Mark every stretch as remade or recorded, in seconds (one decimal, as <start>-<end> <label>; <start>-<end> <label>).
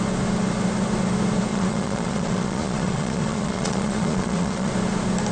0.0-1.5 recorded; 1.5-4.7 remade; 4.7-5.3 recorded